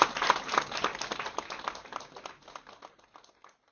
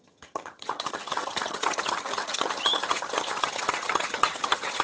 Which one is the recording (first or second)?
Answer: first